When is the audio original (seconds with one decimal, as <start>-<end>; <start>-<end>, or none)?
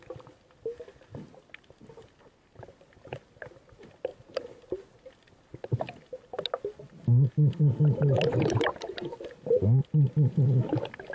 0.0-8.3; 9.2-11.1